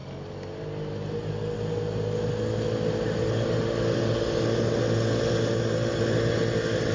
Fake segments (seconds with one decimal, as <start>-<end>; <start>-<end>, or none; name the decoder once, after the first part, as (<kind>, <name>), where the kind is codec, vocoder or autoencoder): none